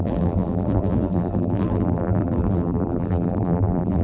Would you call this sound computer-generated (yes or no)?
yes